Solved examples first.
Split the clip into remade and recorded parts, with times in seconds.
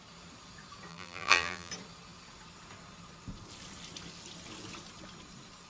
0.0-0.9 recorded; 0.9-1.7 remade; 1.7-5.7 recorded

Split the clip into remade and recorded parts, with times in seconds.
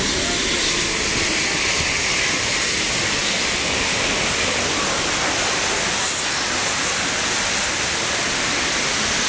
0.0-6.6 recorded; 6.6-7.6 remade; 7.6-9.3 recorded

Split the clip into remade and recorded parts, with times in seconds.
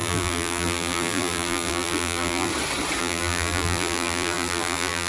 0.0-2.5 remade; 2.5-3.0 recorded; 3.0-5.1 remade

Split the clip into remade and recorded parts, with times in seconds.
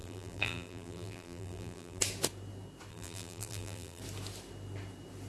0.0-2.0 remade; 2.0-2.9 recorded; 2.9-4.0 remade; 4.0-5.3 recorded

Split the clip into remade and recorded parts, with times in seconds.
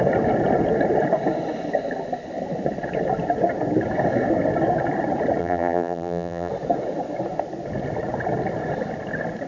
0.0-5.4 recorded; 5.4-6.5 remade; 6.5-9.5 recorded